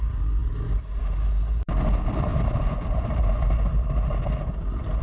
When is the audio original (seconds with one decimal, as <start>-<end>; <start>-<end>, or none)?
0.0-5.0